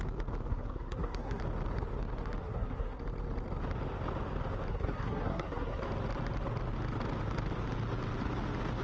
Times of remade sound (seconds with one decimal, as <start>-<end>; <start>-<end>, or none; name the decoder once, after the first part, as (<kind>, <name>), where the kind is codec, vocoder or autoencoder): 0.5-1.4 (codec, SNAC); 2.4-3.0; 4.7-5.8